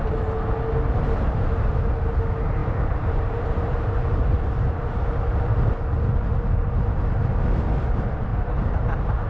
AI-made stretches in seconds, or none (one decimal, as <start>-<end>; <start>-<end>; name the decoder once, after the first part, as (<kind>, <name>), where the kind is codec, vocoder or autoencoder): 2.6-5.5 (vocoder, BigVGAN v2); 8.3-9.3